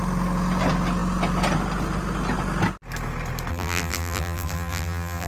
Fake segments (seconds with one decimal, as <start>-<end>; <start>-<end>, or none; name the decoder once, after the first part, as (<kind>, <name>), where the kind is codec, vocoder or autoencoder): 3.5-5.3 (vocoder, BigVGAN v2)